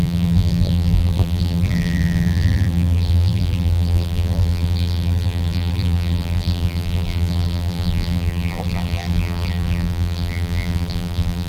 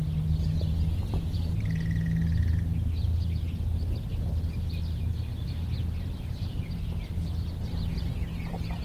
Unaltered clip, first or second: second